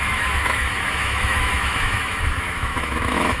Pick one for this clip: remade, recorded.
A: remade